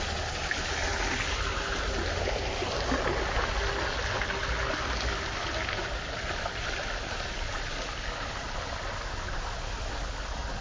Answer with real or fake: real